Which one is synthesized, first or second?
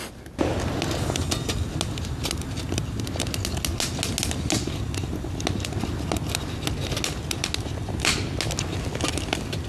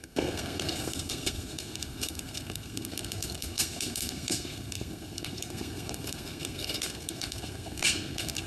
second